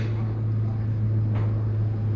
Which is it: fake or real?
real